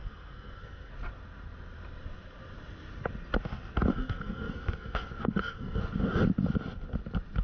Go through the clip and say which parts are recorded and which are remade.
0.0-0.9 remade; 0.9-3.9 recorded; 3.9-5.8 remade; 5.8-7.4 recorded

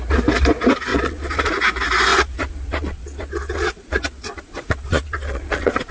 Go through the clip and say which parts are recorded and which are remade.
0.0-0.9 recorded; 0.9-1.5 remade; 1.5-2.1 recorded; 2.1-5.9 remade

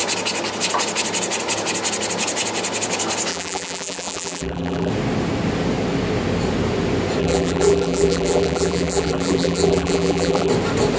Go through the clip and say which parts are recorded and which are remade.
0.0-3.3 recorded; 3.3-4.9 remade; 4.9-7.2 recorded; 7.2-10.5 remade; 10.5-11.0 recorded

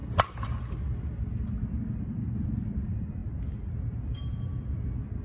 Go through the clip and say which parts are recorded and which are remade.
0.0-5.2 recorded